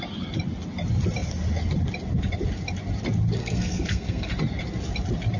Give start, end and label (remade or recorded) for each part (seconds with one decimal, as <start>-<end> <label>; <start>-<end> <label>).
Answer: 0.0-3.4 recorded; 3.4-4.3 remade; 4.3-5.4 recorded